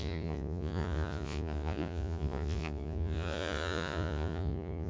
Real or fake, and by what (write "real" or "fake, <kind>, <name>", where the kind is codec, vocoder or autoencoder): fake, vocoder, Vocos